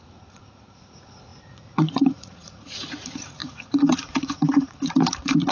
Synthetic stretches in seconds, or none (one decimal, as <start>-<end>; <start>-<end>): 0.0-5.5